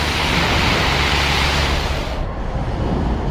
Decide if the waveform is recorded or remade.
remade